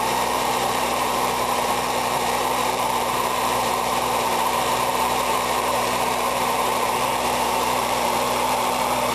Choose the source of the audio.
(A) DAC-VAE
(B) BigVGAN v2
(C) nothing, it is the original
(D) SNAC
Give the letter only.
B